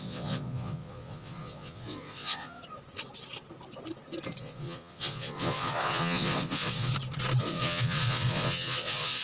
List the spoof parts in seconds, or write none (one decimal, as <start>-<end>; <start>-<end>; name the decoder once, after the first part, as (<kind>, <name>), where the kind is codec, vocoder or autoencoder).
0.0-2.6 (vocoder, Vocos); 4.4-6.9; 7.4-9.2